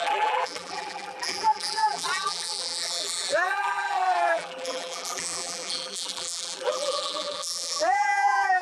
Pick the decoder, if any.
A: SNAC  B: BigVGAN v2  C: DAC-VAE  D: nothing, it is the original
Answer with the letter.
B